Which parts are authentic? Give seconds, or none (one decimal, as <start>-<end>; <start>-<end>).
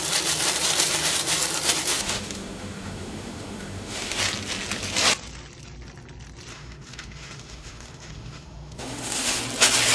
0.0-1.9; 4.2-6.5; 9.4-9.9